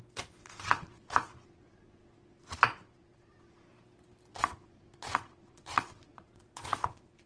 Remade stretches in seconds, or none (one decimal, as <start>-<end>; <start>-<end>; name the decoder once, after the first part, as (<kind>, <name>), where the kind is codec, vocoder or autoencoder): 0.4-3.7 (vocoder, Vocos); 4.3-7.3